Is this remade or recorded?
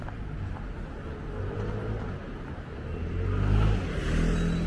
recorded